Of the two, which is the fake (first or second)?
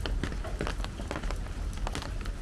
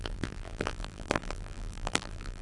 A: second